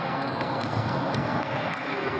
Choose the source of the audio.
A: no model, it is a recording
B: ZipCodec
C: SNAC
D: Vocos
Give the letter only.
C